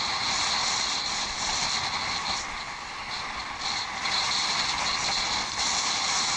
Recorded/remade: recorded